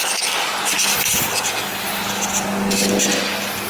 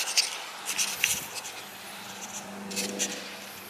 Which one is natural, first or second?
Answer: first